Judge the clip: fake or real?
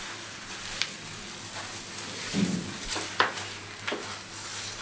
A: real